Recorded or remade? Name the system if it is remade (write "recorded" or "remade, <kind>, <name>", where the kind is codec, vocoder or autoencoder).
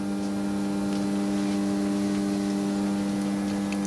recorded